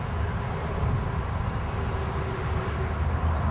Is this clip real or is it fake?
real